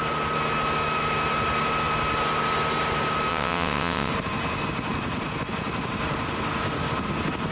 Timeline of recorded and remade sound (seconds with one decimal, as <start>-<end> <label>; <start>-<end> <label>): 0.0-3.3 recorded; 3.3-4.1 remade; 4.1-7.5 recorded